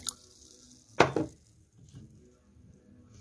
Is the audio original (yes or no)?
yes